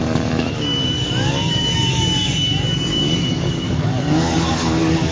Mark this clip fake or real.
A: fake